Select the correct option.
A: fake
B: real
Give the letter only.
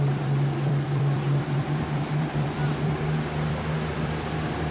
A